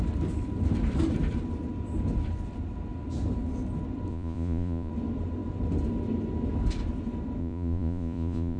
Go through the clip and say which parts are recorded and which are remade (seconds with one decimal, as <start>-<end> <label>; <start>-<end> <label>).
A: 0.0-4.1 recorded; 4.1-4.9 remade; 4.9-7.4 recorded; 7.4-8.6 remade